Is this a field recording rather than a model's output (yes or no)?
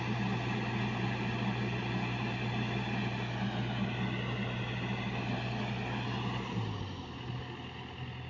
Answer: yes